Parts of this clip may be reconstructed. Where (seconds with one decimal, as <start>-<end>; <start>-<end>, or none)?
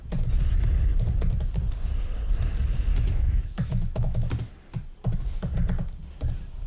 2.9-4.3